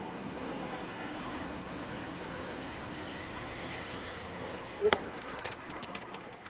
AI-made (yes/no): yes